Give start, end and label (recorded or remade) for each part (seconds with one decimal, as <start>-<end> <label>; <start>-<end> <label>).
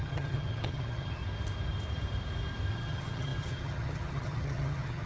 0.0-1.2 remade; 1.2-2.7 recorded; 2.7-5.1 remade